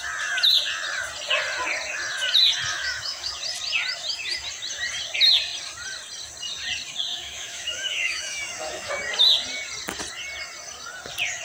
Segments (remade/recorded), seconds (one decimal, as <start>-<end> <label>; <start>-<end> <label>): 0.0-2.7 recorded; 2.7-3.3 remade; 3.3-7.1 recorded; 7.1-8.9 remade; 8.9-11.4 recorded